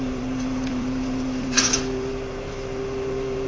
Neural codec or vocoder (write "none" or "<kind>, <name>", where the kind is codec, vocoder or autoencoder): vocoder, BigVGAN v2